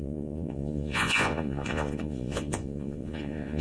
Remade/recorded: remade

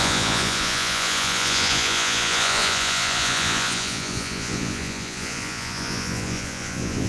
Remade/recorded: remade